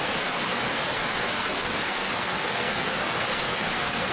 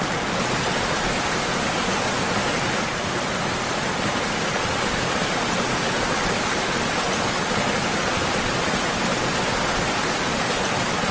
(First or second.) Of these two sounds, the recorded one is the second